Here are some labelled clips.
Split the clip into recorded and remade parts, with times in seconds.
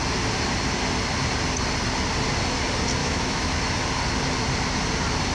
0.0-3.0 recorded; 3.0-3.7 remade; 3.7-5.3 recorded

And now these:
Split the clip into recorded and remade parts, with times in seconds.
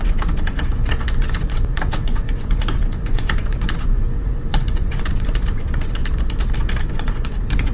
0.0-6.0 remade; 6.0-6.9 recorded; 6.9-7.7 remade